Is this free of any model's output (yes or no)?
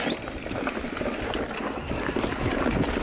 yes